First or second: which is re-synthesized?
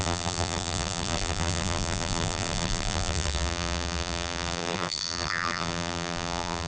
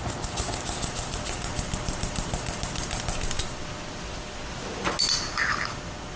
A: first